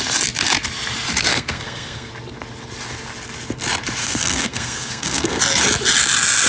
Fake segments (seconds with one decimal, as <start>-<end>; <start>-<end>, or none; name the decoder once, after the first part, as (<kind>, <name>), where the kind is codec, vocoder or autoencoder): 1.3-2.1 (codec, SNAC); 4.0-5.4